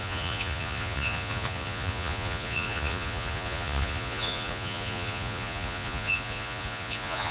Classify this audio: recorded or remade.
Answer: remade